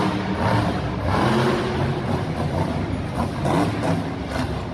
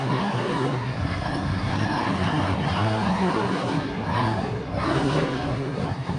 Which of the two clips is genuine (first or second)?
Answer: first